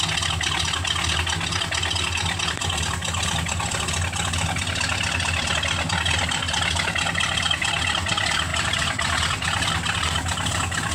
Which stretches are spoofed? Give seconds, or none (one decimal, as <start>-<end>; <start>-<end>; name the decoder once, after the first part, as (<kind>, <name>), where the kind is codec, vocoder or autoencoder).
8.5-9.7 (vocoder, BigVGAN v2)